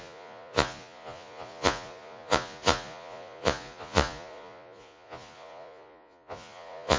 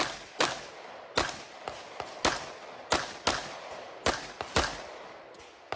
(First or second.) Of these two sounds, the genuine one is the second